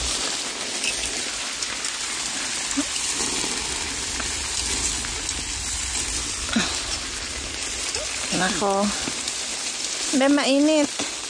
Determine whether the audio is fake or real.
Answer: real